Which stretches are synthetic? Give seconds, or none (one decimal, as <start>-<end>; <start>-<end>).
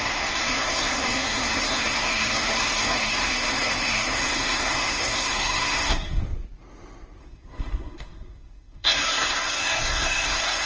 0.0-6.2; 7.2-10.7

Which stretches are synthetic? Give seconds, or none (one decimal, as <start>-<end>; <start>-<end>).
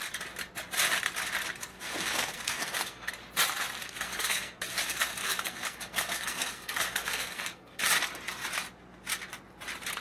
1.7-3.1; 3.8-7.8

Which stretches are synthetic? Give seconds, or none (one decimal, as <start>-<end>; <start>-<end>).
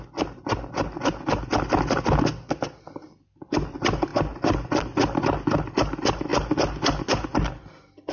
none